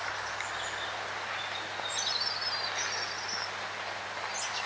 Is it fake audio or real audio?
real